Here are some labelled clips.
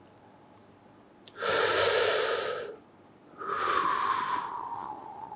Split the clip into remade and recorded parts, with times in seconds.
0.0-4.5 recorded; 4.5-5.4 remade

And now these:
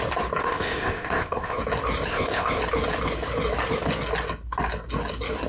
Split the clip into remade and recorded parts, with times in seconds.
0.0-0.4 recorded; 0.4-1.6 remade; 1.6-2.1 recorded; 2.1-2.6 remade; 2.6-5.5 recorded

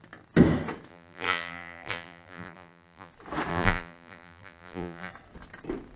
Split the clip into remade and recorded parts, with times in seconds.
0.0-0.9 recorded; 0.9-3.1 remade; 3.1-3.5 recorded; 3.5-5.1 remade; 5.1-6.0 recorded

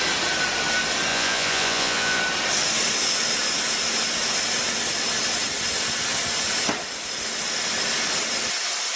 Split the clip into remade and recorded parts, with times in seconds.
0.0-1.1 recorded; 1.1-2.2 remade; 2.2-9.0 recorded

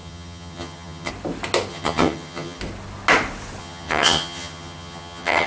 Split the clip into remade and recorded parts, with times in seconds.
0.0-1.1 remade; 1.1-1.7 recorded; 1.7-2.6 remade; 2.6-3.6 recorded; 3.6-5.5 remade

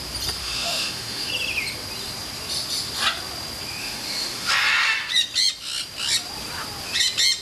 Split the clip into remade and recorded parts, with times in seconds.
0.0-0.4 recorded; 0.4-1.3 remade; 1.3-3.8 recorded; 3.8-4.5 remade; 4.5-7.4 recorded

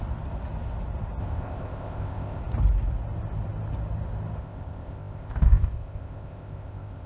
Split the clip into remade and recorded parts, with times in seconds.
0.0-1.2 recorded; 1.2-2.4 remade; 2.4-4.4 recorded; 4.4-7.1 remade

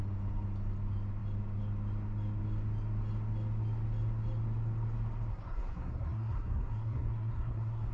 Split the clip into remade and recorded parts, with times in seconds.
0.0-5.3 recorded; 5.3-7.9 remade